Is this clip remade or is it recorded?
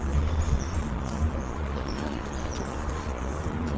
remade